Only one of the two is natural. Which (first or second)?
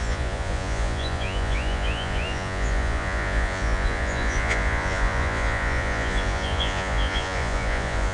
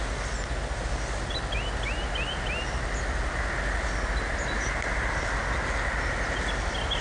second